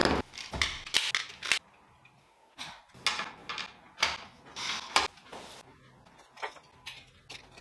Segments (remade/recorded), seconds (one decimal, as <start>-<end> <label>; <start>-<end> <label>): 0.0-2.2 recorded; 2.2-2.8 remade; 2.8-7.6 recorded